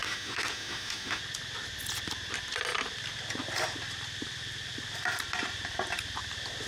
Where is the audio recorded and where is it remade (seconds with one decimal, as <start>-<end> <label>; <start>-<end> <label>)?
0.0-1.2 remade; 1.2-6.7 recorded